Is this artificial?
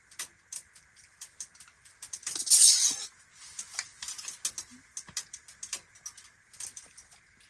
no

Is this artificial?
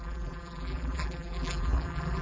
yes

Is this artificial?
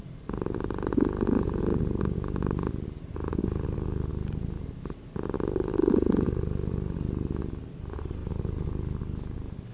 no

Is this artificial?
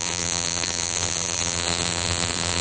yes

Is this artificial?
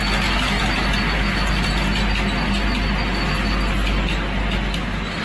no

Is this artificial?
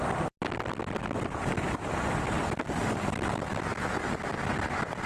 no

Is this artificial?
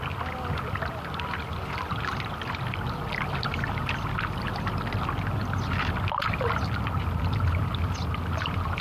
no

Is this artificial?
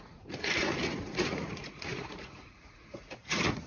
yes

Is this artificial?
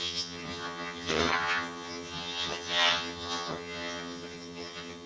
yes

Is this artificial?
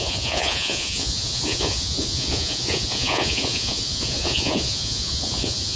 yes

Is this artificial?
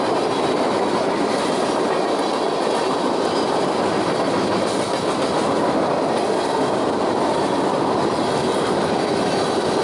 no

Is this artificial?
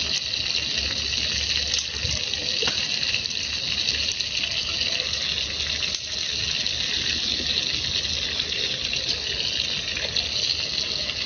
no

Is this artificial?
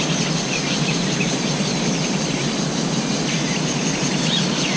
no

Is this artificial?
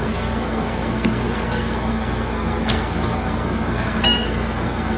yes